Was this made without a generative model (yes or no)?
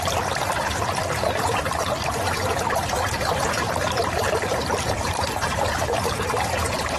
no